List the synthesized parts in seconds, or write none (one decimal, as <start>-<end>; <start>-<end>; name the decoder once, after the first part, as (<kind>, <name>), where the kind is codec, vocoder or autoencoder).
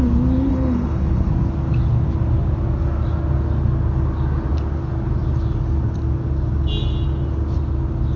0.5-1.3 (codec, HILCodec)